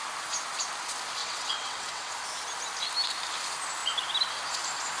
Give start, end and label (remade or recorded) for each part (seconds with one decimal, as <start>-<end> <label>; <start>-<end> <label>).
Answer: 0.0-1.2 recorded; 1.2-2.1 remade; 2.1-5.0 recorded